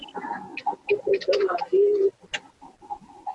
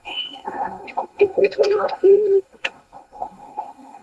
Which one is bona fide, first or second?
first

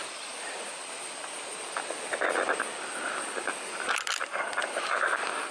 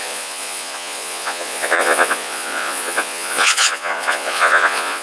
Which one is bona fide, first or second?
first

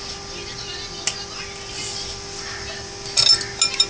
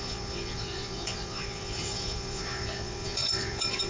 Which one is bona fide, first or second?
first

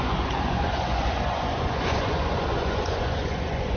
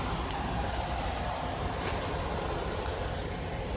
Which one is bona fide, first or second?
second